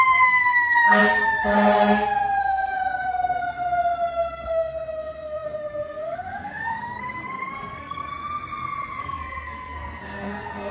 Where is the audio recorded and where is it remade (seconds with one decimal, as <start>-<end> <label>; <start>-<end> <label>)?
0.0-1.0 remade; 1.0-2.4 recorded; 2.4-3.4 remade; 3.4-4.1 recorded; 4.1-8.1 remade; 8.1-9.0 recorded; 9.0-10.7 remade